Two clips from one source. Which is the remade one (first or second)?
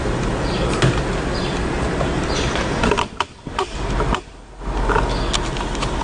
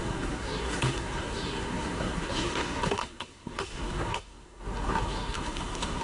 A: second